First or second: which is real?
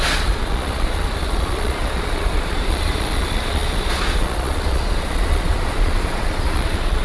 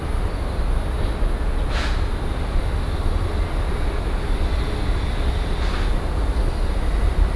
second